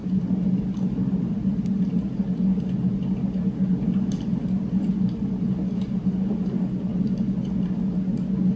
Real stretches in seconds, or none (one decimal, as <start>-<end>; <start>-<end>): 0.0-8.6